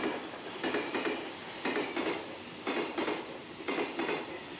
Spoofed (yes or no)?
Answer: no